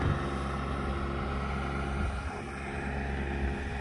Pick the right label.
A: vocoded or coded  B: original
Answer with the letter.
B